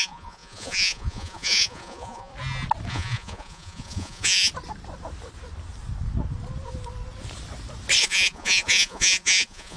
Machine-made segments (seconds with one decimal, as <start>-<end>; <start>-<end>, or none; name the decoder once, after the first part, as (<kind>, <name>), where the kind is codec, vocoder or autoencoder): 0.0-2.3 (vocoder, Vocos); 2.9-4.5; 8.0-9.8